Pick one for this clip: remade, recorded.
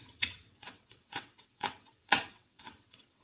remade